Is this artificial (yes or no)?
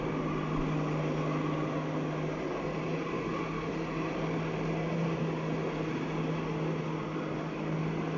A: no